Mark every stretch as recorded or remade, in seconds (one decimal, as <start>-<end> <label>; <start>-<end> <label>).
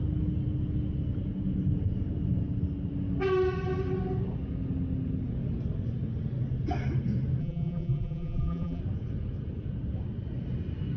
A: 0.0-7.4 recorded; 7.4-8.8 remade; 8.8-11.0 recorded